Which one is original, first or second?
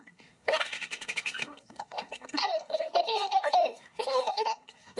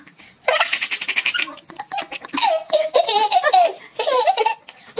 second